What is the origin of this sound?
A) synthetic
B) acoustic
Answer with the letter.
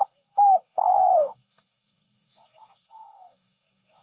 A